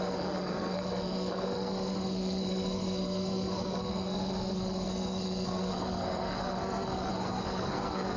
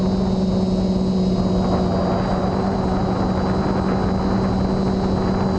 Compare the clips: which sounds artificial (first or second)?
first